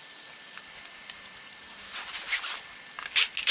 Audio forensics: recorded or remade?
recorded